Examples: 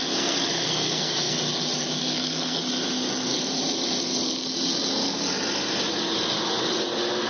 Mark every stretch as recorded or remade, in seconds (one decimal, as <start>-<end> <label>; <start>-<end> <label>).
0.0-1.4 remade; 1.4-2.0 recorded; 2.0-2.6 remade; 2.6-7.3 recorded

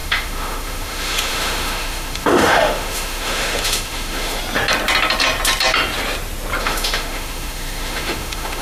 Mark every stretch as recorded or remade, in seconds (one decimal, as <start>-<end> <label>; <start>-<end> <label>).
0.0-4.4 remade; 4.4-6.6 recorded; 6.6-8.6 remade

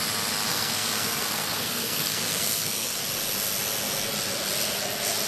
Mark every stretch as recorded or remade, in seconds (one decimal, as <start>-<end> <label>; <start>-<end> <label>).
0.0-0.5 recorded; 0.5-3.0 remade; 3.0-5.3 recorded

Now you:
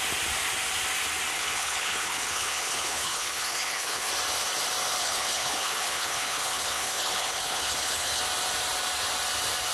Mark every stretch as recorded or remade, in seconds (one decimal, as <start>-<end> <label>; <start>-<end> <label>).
0.0-1.3 recorded; 1.3-4.1 remade; 4.1-5.0 recorded; 5.0-8.2 remade; 8.2-9.7 recorded

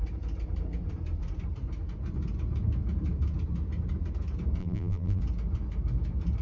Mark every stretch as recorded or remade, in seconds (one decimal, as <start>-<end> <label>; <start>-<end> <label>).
0.0-4.6 recorded; 4.6-5.2 remade; 5.2-6.4 recorded

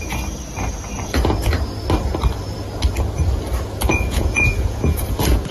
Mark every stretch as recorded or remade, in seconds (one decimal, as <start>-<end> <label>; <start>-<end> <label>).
0.0-3.9 recorded; 3.9-5.0 remade; 5.0-5.5 recorded

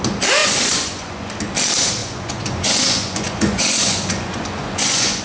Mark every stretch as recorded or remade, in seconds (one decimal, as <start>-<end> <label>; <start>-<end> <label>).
0.0-0.4 recorded; 0.4-1.3 remade; 1.3-2.0 recorded; 2.0-5.2 remade